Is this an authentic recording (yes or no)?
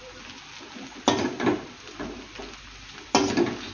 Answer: yes